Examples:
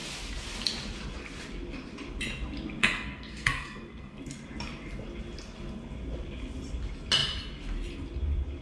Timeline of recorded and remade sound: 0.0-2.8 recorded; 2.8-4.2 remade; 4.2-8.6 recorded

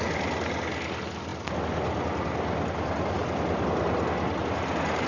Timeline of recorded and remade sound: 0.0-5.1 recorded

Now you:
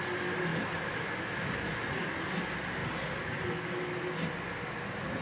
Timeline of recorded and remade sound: 0.0-0.5 recorded; 0.5-2.0 remade; 2.0-5.2 recorded

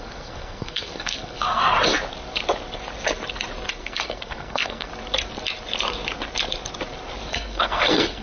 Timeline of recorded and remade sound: 0.0-1.6 remade; 1.6-3.8 recorded; 3.8-4.9 remade; 4.9-7.3 recorded; 7.3-8.2 remade